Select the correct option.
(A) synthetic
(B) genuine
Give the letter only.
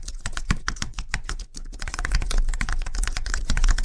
A